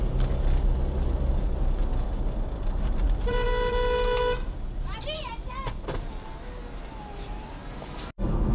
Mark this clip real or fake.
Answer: real